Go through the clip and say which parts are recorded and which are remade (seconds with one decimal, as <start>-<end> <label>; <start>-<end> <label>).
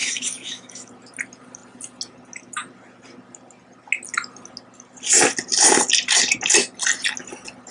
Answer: 0.0-0.9 remade; 0.9-7.7 recorded